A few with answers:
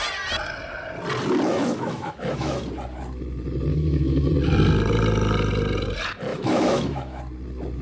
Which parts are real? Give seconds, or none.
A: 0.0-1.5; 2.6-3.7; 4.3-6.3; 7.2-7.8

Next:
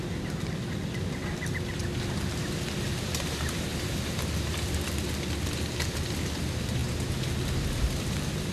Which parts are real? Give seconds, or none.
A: 0.0-3.7; 5.3-8.5

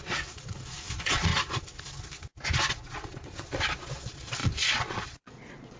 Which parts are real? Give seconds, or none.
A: 1.3-2.7

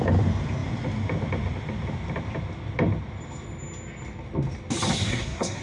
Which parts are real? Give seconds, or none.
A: 0.0-5.1

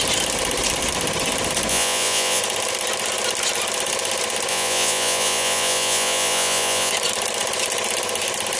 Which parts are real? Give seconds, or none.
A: 0.0-1.7; 2.4-4.5; 6.9-8.6